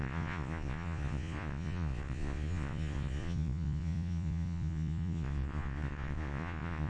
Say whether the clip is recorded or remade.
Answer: remade